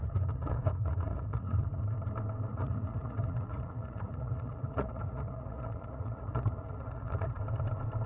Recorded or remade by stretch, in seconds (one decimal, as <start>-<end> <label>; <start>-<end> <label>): 0.0-1.8 remade; 1.8-2.5 recorded; 2.5-7.4 remade; 7.4-8.1 recorded